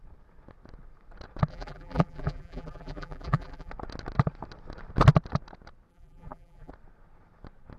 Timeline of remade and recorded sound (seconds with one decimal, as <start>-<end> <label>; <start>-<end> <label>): 0.0-1.5 recorded; 1.5-3.7 remade; 3.7-5.9 recorded; 5.9-6.7 remade; 6.7-7.8 recorded

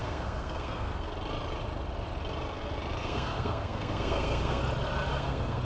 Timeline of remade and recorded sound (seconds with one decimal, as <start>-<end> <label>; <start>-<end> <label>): 0.0-1.1 remade; 1.1-3.0 recorded; 3.0-4.6 remade; 4.6-5.1 recorded; 5.1-5.6 remade

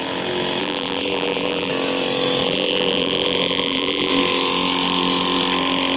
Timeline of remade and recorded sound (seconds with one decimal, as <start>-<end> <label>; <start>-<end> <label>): 0.0-0.6 recorded; 0.6-1.7 remade; 1.7-2.4 recorded; 2.4-4.1 remade; 4.1-6.0 recorded

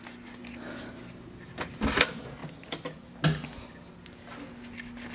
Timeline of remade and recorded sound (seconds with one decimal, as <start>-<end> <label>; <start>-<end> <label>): 0.0-5.1 recorded

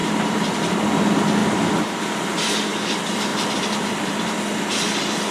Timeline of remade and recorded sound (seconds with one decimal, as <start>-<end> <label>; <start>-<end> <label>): 0.0-0.6 remade; 0.6-1.4 recorded; 1.4-2.0 remade; 2.0-3.3 recorded; 3.3-4.4 remade; 4.4-5.3 recorded

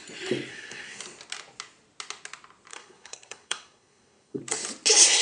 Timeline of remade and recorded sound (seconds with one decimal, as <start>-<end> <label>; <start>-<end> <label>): 0.0-0.5 recorded; 0.5-1.0 remade; 1.0-2.7 recorded; 2.7-4.4 remade; 4.4-5.2 recorded

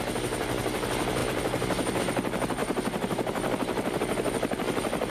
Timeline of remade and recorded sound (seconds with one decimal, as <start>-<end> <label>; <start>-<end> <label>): 0.0-1.2 recorded; 1.2-2.0 remade; 2.0-2.6 recorded; 2.6-4.0 remade; 4.0-5.1 recorded

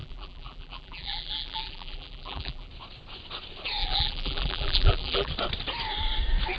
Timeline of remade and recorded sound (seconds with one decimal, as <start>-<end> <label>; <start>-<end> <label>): 0.0-2.7 remade; 2.7-3.8 recorded; 3.8-5.3 remade; 5.3-6.6 recorded